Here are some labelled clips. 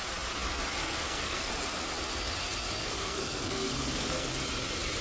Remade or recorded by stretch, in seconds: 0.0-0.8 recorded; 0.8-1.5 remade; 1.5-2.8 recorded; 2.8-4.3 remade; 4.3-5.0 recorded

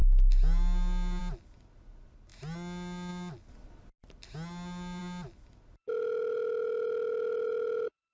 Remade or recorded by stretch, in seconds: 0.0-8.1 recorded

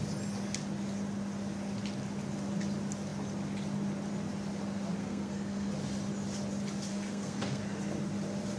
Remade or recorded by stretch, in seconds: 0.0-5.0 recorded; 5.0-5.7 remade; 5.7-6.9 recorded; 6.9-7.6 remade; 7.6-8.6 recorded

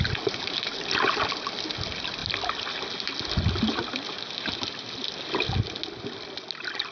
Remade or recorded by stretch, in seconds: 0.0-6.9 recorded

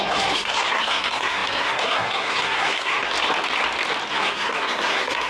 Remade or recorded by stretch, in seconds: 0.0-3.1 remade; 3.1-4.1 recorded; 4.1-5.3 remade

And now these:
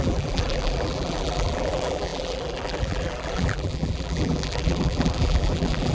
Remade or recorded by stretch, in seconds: 0.0-5.9 remade

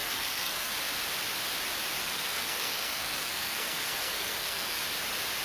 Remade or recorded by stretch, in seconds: 0.0-0.7 remade; 0.7-2.0 recorded; 2.0-4.8 remade; 4.8-5.4 recorded

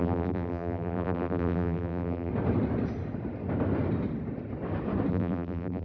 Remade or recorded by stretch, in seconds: 0.0-2.3 remade; 2.3-5.1 recorded; 5.1-5.8 remade